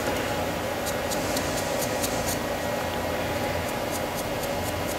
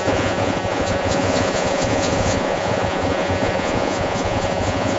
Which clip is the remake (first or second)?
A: second